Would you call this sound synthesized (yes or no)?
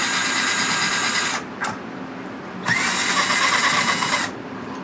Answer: no